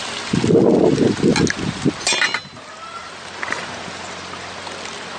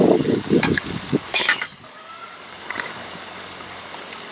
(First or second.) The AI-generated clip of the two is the second